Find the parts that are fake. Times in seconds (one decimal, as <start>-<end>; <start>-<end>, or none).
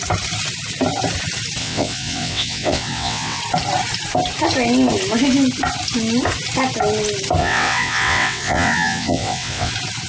1.6-3.4; 7.4-9.7